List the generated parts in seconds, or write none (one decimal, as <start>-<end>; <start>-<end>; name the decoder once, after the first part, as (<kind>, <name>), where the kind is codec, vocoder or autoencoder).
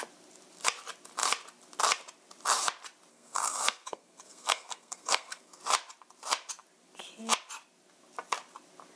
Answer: 3.1-5.6 (codec, SNAC)